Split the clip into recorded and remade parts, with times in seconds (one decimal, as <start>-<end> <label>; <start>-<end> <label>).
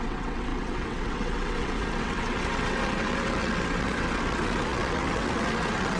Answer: 0.0-6.0 remade